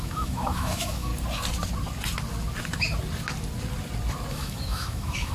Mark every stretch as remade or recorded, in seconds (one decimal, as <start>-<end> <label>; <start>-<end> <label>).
0.0-1.1 remade; 1.1-4.3 recorded; 4.3-5.3 remade